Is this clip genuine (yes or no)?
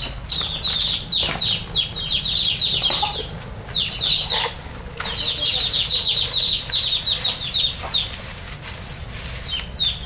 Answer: yes